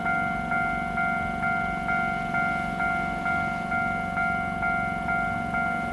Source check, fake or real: real